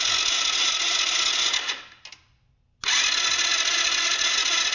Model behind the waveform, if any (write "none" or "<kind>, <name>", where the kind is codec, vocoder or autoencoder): none